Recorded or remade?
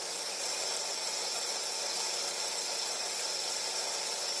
recorded